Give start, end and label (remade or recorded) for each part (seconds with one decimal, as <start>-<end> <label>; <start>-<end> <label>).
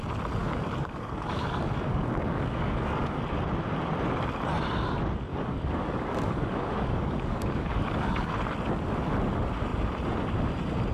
0.0-0.4 recorded; 0.4-3.2 remade; 3.2-5.3 recorded; 5.3-8.3 remade; 8.3-10.9 recorded